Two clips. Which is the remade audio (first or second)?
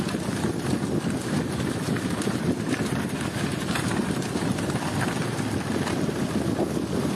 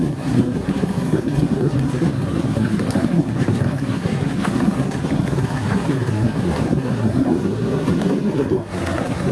second